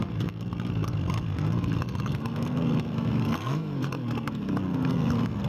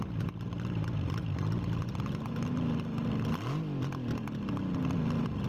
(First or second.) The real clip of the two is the second